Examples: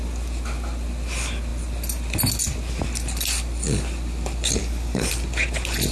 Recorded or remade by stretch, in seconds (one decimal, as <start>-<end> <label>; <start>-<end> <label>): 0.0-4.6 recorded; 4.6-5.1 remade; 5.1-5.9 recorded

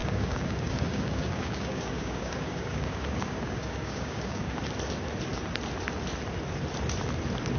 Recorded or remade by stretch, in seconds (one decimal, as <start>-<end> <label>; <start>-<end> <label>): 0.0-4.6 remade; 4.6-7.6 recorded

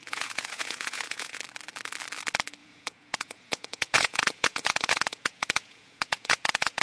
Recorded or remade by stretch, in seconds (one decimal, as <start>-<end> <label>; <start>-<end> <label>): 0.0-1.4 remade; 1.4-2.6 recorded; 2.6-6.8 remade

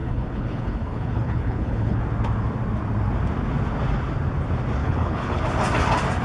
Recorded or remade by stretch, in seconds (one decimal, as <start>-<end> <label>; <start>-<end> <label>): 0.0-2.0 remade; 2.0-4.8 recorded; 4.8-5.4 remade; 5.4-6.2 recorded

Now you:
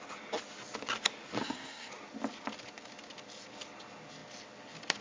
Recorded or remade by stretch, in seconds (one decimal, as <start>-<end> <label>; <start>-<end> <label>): 0.0-1.4 recorded; 1.4-1.9 remade; 1.9-5.0 recorded